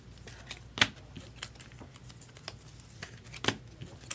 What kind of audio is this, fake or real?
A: real